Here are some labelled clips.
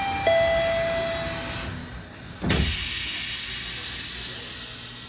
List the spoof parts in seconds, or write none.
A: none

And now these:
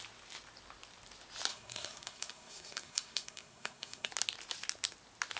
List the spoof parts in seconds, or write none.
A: 1.5-4.1 (codec, SNAC)

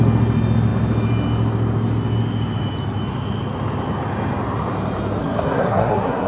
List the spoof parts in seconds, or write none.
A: 5.2-6.3 (codec, SNAC)

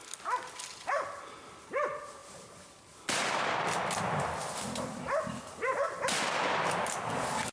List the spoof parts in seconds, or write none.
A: none